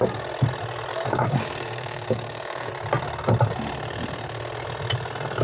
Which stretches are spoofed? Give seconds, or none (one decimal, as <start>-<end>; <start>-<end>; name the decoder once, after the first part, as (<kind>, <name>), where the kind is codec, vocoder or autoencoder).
0.9-2.7 (codec, DAC)